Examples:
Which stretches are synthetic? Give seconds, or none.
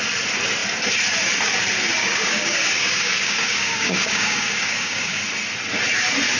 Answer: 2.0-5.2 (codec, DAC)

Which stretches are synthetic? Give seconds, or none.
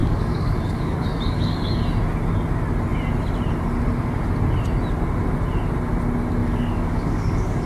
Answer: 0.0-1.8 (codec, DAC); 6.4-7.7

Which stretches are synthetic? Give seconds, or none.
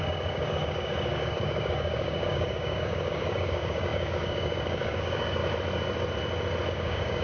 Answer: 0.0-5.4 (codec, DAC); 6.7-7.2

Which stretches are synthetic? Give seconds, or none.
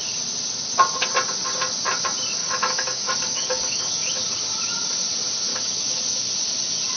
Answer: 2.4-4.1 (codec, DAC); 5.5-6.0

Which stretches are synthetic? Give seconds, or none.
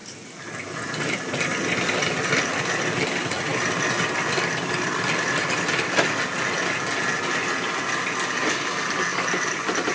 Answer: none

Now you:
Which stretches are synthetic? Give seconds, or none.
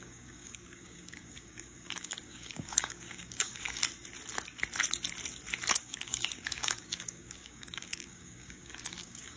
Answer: 0.0-3.8 (codec, DAC); 5.7-9.4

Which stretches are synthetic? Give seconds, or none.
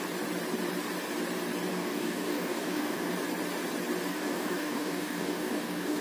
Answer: 1.7-3.1 (codec, DAC); 4.1-6.0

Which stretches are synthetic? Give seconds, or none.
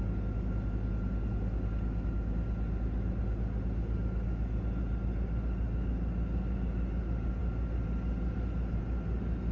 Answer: none